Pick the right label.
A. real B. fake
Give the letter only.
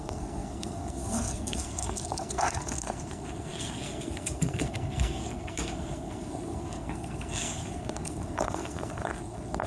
B